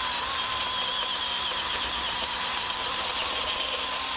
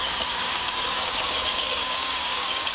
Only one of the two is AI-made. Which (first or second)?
second